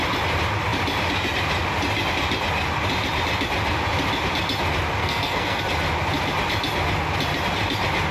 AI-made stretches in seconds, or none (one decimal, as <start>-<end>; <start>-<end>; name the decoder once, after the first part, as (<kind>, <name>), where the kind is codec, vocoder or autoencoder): 5.0-5.6 (codec, SNAC)